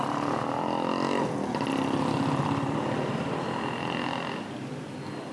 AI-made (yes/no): yes